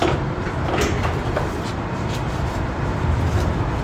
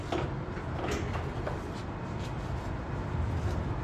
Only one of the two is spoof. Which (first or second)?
first